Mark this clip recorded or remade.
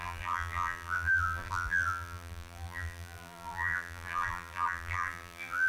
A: remade